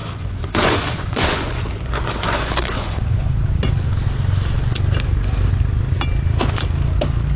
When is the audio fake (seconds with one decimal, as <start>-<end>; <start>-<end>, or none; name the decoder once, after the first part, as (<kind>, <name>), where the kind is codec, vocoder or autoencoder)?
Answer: 0.0-3.3 (vocoder, Vocos)